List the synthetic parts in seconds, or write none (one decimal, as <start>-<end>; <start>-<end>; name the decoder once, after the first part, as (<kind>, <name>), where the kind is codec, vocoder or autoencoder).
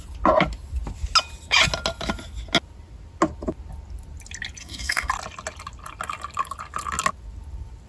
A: 4.6-5.1 (codec, DAC)